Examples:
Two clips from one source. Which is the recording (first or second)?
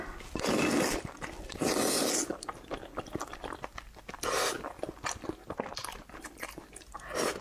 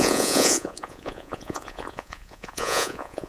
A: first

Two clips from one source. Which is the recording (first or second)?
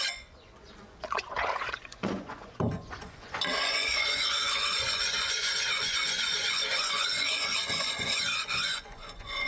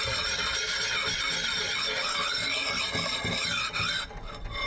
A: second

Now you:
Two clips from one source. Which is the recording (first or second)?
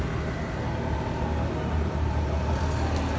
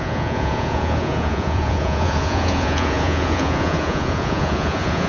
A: first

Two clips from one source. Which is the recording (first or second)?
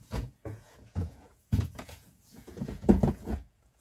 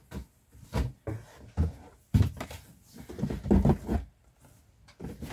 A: second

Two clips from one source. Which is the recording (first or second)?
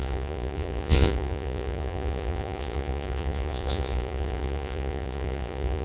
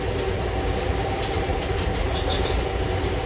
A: second